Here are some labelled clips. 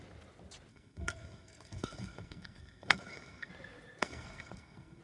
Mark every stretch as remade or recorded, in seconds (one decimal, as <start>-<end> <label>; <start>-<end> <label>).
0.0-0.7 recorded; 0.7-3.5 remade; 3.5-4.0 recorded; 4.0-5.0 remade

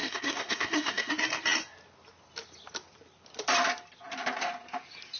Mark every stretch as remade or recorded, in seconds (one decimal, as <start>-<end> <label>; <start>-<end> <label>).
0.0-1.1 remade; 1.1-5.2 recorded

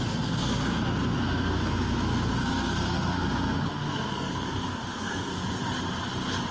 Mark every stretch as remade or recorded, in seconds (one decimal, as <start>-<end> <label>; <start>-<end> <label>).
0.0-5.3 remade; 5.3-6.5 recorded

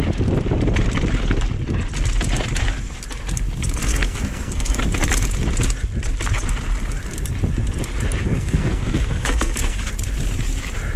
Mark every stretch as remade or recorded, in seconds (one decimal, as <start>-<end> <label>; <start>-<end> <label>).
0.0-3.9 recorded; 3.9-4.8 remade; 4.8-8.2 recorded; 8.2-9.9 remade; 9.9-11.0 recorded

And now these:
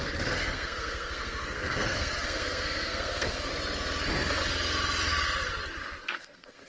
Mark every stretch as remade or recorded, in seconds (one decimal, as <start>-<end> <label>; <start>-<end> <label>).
0.0-3.5 remade; 3.5-6.0 recorded; 6.0-6.7 remade

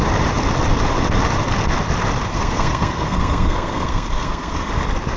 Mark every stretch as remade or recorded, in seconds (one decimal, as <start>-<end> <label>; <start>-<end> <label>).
0.0-2.3 recorded; 2.3-4.7 remade; 4.7-5.2 recorded